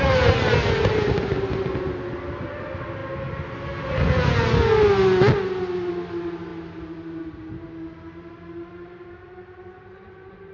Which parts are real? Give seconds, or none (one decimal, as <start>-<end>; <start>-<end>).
0.0-10.5